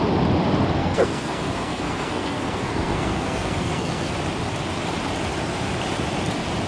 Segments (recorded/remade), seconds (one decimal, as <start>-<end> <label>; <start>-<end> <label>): 0.0-0.8 recorded; 0.8-4.1 remade; 4.1-6.7 recorded